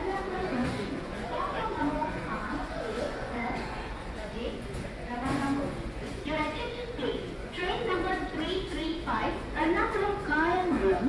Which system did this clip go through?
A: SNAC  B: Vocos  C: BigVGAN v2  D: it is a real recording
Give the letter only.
B